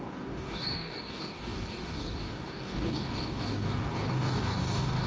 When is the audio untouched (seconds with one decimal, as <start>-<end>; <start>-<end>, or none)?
none